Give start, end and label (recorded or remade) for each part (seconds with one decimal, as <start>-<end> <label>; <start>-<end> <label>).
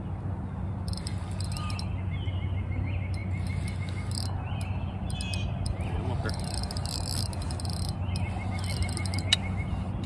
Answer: 0.0-10.1 recorded